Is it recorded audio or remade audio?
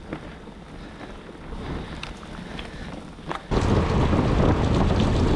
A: recorded